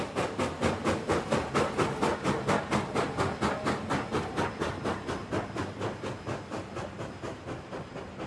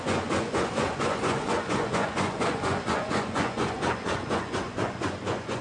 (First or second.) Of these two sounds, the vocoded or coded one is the second